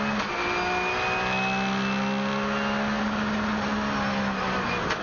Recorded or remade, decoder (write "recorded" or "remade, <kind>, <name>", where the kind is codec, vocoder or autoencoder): recorded